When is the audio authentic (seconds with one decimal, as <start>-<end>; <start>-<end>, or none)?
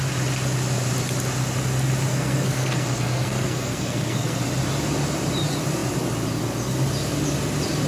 0.0-2.1; 4.4-7.9